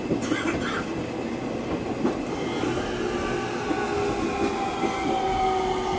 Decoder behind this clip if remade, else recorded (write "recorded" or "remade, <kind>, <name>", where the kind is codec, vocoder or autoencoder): recorded